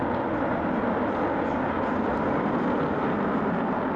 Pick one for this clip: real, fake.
real